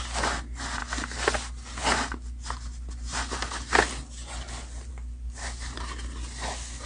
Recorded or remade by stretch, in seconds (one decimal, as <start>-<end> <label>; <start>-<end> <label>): 0.0-6.9 recorded